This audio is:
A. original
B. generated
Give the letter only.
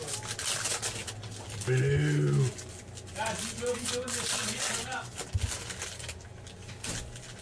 A